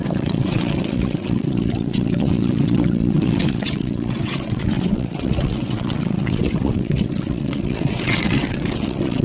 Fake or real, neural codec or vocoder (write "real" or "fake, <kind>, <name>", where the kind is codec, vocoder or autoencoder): fake, vocoder, WaveNeXt